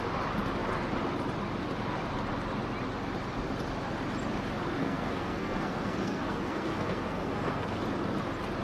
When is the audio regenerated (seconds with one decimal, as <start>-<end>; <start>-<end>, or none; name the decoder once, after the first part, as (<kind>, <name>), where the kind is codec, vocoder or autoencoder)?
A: 4.8-7.8 (codec, SNAC)